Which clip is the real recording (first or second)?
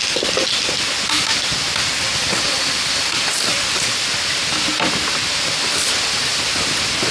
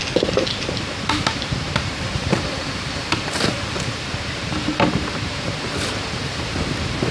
first